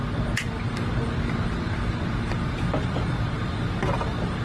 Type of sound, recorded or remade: recorded